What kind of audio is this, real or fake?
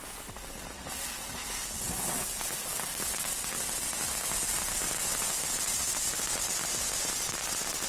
real